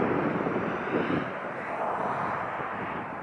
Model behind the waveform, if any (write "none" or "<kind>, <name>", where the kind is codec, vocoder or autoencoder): none